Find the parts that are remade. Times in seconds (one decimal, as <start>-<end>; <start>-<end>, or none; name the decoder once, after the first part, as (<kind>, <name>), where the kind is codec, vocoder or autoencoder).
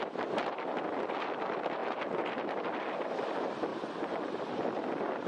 1.8-2.5 (vocoder, BigVGAN v2); 3.7-4.3